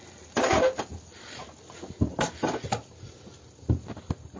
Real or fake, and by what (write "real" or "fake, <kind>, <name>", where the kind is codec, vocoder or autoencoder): fake, vocoder, BigVGAN v2